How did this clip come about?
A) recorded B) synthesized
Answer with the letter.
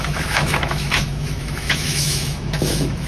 B